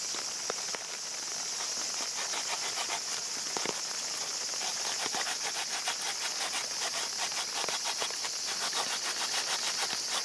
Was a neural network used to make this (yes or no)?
no